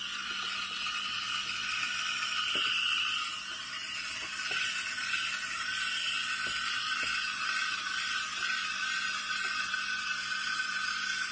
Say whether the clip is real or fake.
real